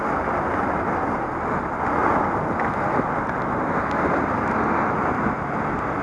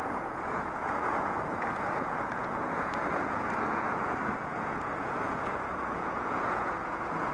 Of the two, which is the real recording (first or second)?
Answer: first